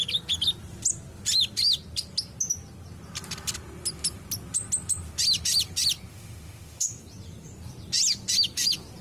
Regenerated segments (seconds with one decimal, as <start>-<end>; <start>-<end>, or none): 6.1-6.9